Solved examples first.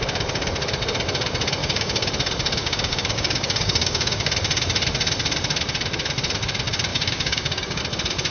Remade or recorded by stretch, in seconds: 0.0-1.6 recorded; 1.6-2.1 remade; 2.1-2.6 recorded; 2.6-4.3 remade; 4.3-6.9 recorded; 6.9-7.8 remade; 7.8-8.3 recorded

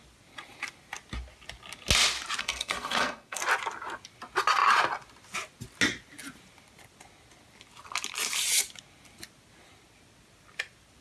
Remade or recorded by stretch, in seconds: 0.0-2.4 recorded; 2.4-3.4 remade; 3.4-11.0 recorded

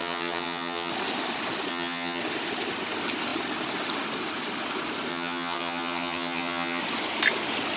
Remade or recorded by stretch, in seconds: 0.0-0.9 remade; 0.9-1.7 recorded; 1.7-2.2 remade; 2.2-5.1 recorded; 5.1-6.8 remade; 6.8-7.8 recorded

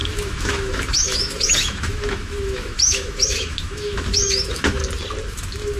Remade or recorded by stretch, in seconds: 0.0-4.8 remade; 4.8-5.3 recorded; 5.3-5.8 remade

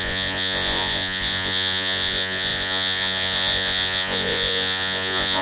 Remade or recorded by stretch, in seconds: 0.0-5.4 remade

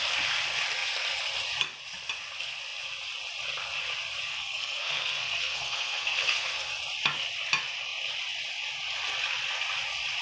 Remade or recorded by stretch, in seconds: 0.0-4.3 recorded; 4.3-6.7 remade; 6.7-10.2 recorded